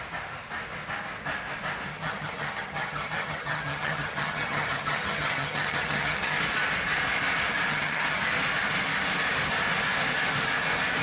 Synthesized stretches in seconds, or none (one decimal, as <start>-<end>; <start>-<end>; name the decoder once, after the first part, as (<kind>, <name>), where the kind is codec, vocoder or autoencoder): 1.9-6.4 (vocoder, HiFi-GAN); 7.7-8.2